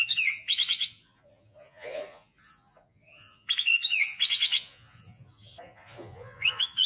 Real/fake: fake